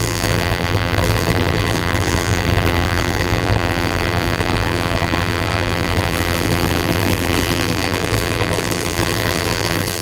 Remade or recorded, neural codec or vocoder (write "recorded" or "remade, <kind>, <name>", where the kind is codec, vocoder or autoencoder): remade, vocoder, BigVGAN v2